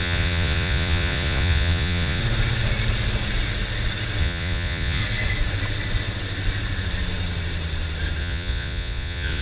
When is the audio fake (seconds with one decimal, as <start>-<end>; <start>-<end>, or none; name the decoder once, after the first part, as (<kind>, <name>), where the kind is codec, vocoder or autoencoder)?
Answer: 0.0-2.2 (vocoder, Vocos); 4.2-5.0; 8.2-9.4